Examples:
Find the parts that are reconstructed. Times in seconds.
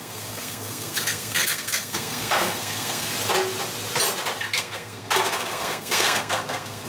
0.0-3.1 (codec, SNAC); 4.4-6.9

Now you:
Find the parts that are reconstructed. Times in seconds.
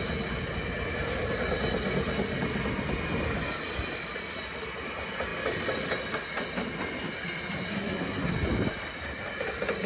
7.7-8.3 (codec, SNAC)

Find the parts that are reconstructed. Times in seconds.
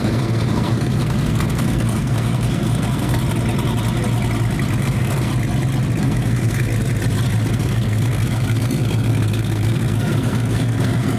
0.0-3.2 (codec, SNAC); 4.8-5.3; 6.0-6.7; 7.5-11.2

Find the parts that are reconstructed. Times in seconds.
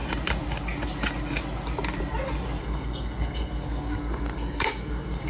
2.6-5.3 (codec, SNAC)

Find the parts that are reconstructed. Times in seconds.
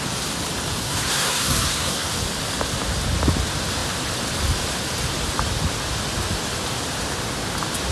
0.8-2.1 (codec, SNAC)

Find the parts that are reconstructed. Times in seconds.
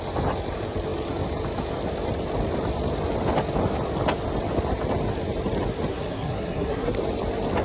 5.9-7.0 (codec, SNAC)